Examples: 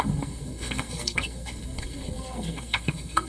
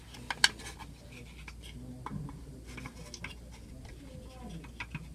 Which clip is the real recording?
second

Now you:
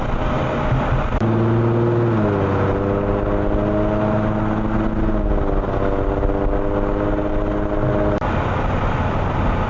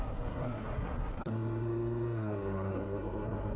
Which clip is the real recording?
first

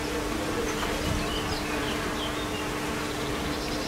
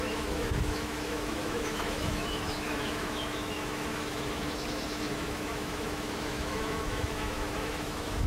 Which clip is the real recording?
first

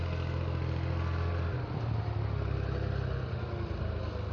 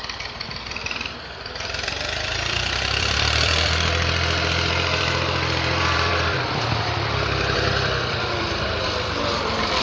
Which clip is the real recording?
first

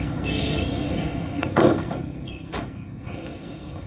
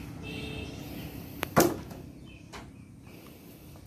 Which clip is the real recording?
second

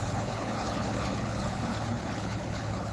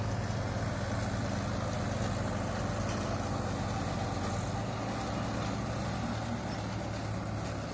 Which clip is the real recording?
second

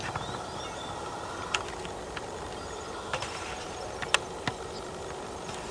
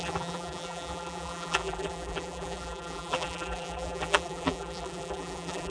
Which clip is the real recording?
first